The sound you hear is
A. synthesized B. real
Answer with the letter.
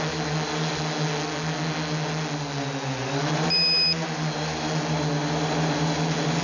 B